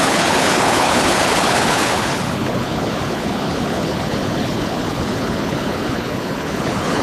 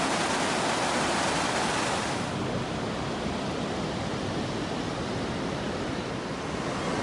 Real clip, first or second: second